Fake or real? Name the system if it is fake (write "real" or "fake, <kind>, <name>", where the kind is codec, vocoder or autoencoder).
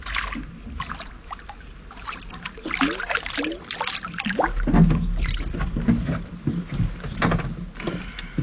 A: real